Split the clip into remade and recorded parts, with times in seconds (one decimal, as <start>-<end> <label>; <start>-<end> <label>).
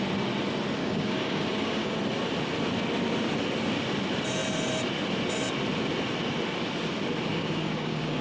0.0-0.8 recorded; 0.8-2.0 remade; 2.0-7.3 recorded; 7.3-8.2 remade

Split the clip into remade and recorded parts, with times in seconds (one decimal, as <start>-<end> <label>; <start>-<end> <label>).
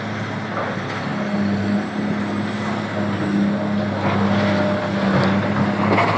0.0-6.2 recorded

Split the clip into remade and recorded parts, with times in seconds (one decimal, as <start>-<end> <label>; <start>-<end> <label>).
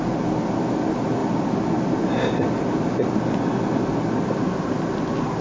0.0-5.4 recorded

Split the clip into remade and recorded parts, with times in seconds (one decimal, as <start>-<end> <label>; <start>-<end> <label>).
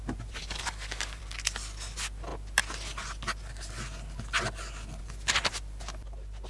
0.0-0.4 recorded; 0.4-1.2 remade; 1.2-6.5 recorded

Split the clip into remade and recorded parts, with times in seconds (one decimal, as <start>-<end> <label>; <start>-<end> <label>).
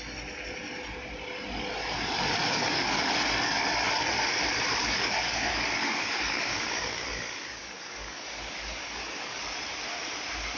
0.0-2.4 recorded; 2.4-3.1 remade; 3.1-4.8 recorded; 4.8-9.4 remade; 9.4-10.6 recorded